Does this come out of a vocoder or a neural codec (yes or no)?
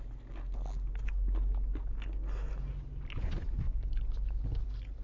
no